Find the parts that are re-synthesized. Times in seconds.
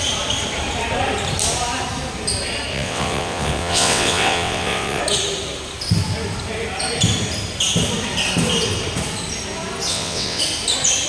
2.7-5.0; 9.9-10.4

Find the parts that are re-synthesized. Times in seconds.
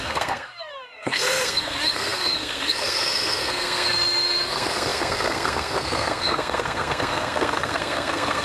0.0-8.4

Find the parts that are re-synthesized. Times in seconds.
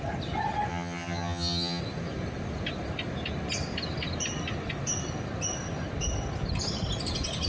0.7-1.8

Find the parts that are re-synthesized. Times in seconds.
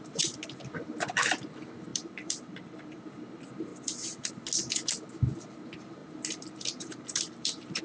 1.9-3.1; 3.7-4.3; 6.0-7.8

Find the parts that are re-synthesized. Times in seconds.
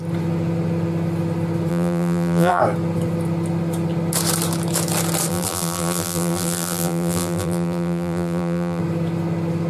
1.7-2.6; 5.3-8.8